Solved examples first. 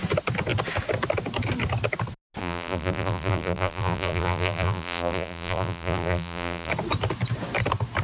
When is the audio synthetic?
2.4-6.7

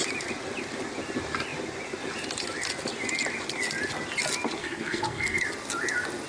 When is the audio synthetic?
4.6-5.4

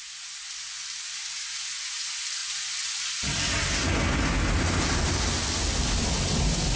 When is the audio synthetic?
none

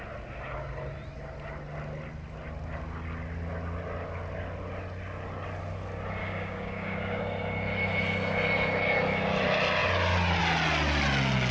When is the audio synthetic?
6.2-7.2

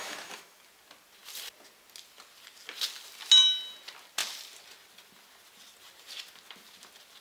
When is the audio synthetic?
0.0-0.6

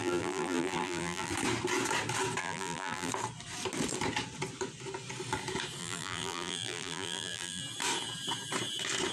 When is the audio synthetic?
0.0-1.3; 2.4-3.1; 5.8-7.6

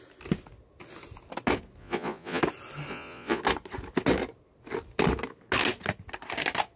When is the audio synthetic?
1.8-2.4; 2.9-3.4

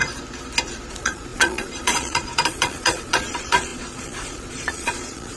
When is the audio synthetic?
0.9-5.4